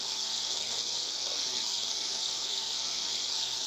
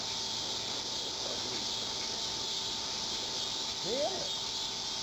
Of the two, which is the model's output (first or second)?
first